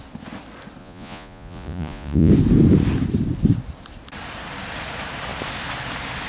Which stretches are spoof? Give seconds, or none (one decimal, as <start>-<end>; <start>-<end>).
0.8-2.3